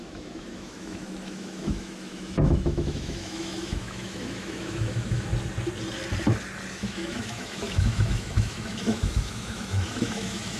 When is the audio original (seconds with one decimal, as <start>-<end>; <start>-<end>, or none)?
5.3-6.7